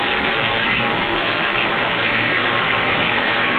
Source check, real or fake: fake